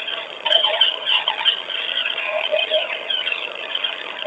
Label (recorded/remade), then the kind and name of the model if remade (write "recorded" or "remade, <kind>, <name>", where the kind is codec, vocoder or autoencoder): remade, vocoder, HiFi-GAN